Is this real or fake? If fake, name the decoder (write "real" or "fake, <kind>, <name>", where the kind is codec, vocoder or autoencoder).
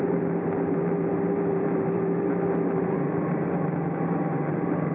fake, vocoder, BigVGAN v2